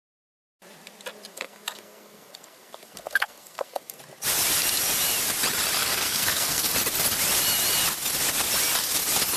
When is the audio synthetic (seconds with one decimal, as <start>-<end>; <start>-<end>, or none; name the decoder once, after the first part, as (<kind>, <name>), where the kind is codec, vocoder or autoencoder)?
1.3-4.0 (codec, SNAC); 5.8-6.7